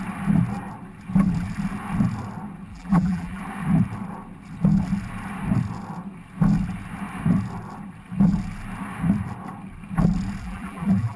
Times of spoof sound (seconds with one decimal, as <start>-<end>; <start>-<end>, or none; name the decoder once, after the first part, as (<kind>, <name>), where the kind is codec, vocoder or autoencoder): 2.7-3.4 (vocoder, BigVGAN v2); 10.4-11.2